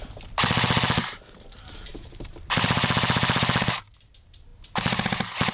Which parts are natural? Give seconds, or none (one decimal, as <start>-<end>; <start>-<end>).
0.0-1.9; 3.6-5.5